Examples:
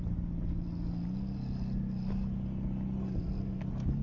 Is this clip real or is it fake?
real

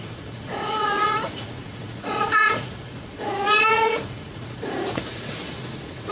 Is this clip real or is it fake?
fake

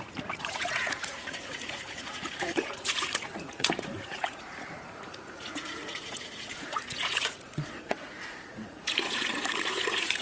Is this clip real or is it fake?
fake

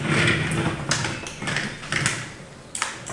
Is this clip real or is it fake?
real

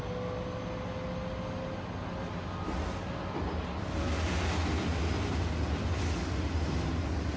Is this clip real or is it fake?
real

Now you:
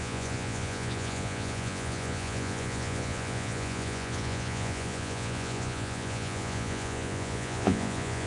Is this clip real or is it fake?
fake